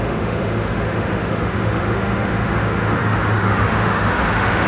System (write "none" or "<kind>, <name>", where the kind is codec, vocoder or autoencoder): autoencoder, DAC-VAE